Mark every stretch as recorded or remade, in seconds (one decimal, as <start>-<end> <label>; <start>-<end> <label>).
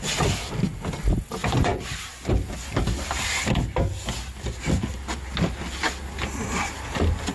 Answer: 0.0-7.3 recorded